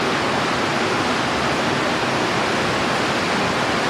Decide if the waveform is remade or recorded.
recorded